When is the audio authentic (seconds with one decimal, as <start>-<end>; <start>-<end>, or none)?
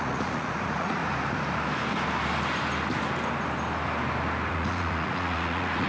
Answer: 1.0-4.5